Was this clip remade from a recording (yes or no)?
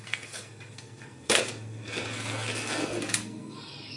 yes